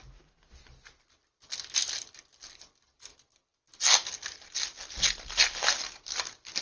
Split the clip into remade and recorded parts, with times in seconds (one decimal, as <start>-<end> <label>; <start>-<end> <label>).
0.0-6.6 recorded